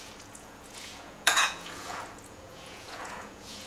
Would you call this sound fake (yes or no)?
yes